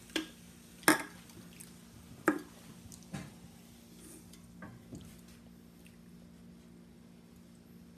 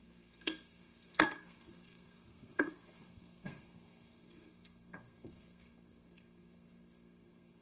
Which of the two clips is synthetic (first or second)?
second